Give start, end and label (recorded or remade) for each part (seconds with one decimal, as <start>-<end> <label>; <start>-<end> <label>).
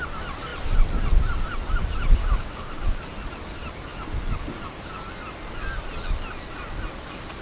0.0-2.2 recorded; 2.2-3.0 remade; 3.0-7.4 recorded